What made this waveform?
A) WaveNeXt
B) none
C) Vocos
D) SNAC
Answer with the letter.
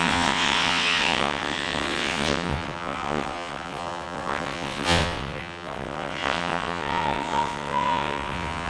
A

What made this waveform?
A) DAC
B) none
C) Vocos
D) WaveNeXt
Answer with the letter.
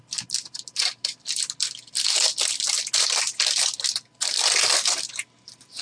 B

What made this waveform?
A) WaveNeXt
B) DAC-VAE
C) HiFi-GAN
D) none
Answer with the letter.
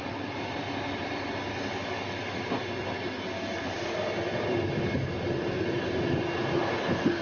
D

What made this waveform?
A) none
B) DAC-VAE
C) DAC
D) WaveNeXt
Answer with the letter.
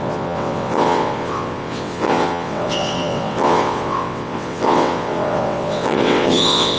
D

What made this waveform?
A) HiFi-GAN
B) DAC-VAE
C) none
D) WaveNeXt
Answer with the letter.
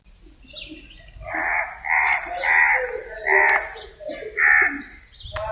C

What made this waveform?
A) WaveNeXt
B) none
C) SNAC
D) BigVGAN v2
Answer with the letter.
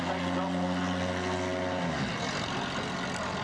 B